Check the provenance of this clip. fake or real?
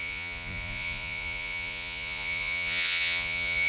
fake